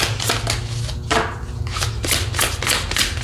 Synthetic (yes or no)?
no